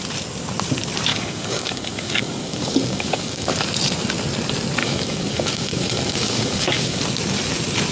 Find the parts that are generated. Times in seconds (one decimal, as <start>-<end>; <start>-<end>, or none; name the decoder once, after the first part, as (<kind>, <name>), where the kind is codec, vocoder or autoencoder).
1.1-3.5 (codec, DAC); 4.8-7.0